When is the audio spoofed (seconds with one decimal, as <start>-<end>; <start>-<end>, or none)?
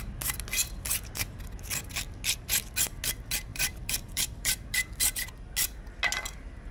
3.5-5.0